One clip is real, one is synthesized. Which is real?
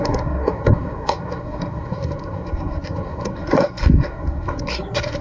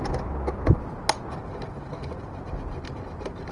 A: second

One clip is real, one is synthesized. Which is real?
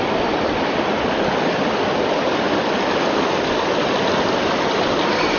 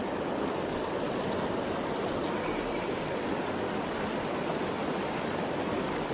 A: second